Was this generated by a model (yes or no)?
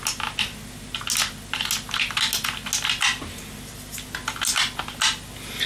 no